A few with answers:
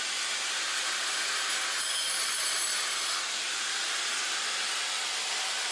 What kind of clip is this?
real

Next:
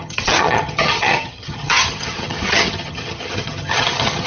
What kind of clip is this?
fake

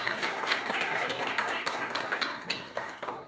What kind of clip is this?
fake